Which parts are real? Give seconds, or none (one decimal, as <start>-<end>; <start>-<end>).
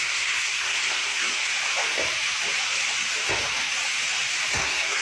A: 1.5-4.5